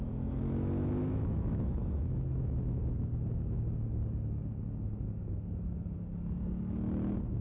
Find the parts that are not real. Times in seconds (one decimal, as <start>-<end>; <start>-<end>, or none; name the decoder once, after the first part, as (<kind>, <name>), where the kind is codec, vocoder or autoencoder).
0.0-2.8 (autoencoder, DAC-VAE)